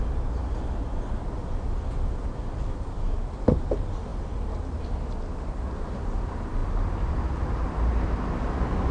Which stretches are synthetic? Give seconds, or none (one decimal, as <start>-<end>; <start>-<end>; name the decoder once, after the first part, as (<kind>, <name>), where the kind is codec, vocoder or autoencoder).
none